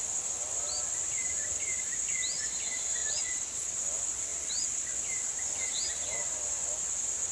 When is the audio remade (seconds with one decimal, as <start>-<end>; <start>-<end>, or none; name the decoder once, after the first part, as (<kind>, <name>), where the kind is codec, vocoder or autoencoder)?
3.0-3.8 (vocoder, Vocos)